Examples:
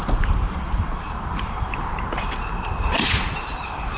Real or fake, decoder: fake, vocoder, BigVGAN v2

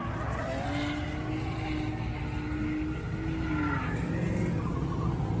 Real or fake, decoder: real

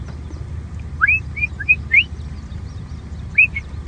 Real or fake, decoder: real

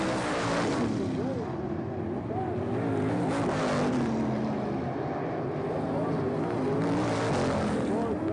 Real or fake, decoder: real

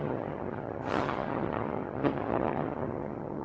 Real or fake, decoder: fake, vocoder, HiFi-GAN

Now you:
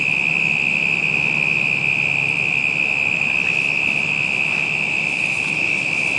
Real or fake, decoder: real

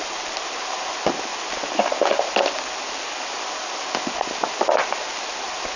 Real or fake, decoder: real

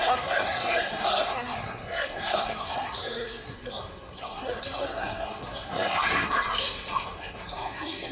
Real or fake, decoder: fake, codec, SNAC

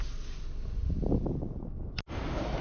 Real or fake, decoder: real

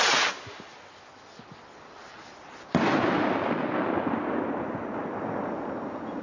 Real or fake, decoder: real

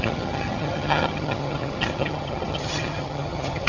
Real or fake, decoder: fake, vocoder, HiFi-GAN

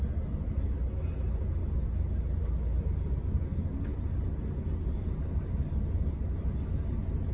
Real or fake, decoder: real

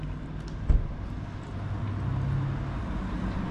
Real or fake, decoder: real